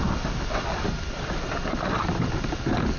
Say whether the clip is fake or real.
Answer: real